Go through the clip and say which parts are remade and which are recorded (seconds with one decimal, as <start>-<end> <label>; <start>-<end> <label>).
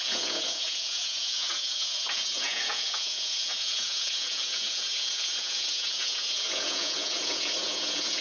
0.0-8.2 remade